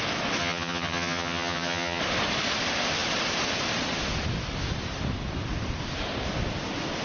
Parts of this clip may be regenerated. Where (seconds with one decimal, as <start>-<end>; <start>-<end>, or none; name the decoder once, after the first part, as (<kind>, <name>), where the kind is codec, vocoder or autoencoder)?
0.4-2.0 (vocoder, HiFi-GAN)